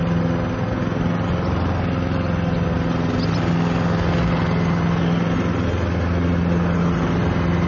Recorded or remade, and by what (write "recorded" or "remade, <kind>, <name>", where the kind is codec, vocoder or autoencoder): recorded